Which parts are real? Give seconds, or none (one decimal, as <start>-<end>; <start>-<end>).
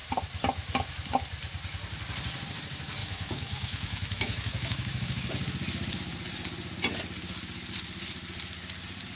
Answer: 0.0-3.0; 5.3-9.2